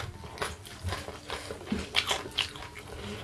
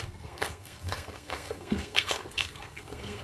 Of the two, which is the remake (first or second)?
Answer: second